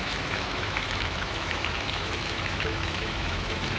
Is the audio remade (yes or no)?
yes